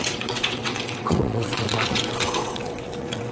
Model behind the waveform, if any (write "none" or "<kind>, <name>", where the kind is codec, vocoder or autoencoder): vocoder, WaveNeXt